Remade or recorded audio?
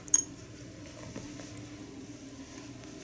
recorded